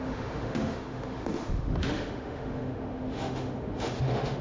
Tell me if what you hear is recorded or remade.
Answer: remade